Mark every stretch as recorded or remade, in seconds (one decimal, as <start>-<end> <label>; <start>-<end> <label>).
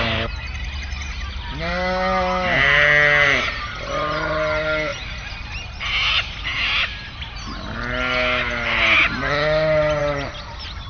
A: 0.0-10.9 recorded